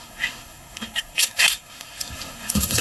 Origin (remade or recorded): remade